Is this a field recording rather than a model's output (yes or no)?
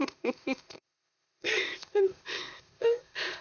no